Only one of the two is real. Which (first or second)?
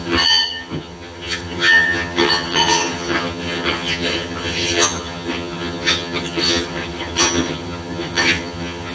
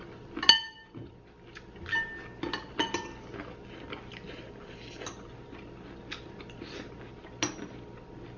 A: second